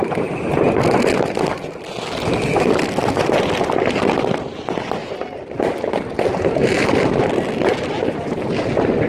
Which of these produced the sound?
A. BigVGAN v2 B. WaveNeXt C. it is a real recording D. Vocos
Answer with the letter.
C